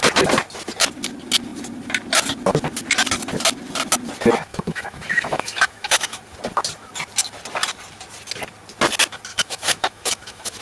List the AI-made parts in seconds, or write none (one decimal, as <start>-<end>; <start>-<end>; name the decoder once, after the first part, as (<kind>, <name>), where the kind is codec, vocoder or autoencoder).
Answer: 4.5-6.2 (autoencoder, DAC-VAE); 9.3-10.6